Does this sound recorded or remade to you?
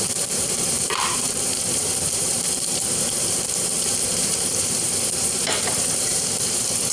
remade